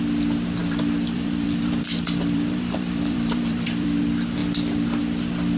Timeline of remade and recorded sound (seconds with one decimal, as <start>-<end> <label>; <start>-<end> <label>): 0.0-0.6 recorded; 0.6-4.0 remade; 4.0-5.6 recorded